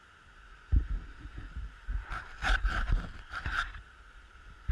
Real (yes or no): no